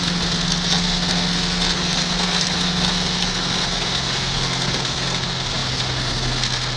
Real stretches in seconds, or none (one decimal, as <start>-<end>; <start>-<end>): none